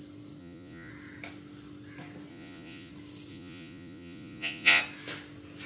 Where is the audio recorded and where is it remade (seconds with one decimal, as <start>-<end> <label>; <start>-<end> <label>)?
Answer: 0.0-0.4 recorded; 0.4-0.9 remade; 0.9-2.3 recorded; 2.3-2.9 remade; 2.9-3.3 recorded; 3.3-4.8 remade; 4.8-5.7 recorded